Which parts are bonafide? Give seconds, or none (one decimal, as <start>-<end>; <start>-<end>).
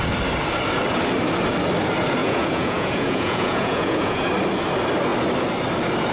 0.0-2.2; 4.3-6.1